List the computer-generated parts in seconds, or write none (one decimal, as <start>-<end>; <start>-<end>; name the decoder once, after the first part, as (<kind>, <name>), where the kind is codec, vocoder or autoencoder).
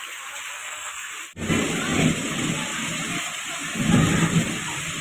0.5-1.1 (codec, SNAC)